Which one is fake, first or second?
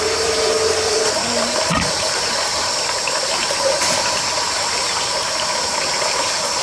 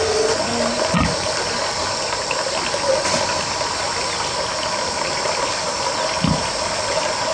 first